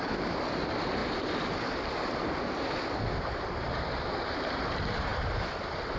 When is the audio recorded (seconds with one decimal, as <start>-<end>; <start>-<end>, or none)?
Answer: 0.0-6.0